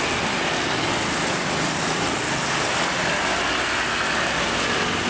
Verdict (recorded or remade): recorded